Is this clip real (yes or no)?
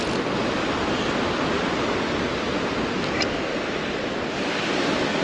yes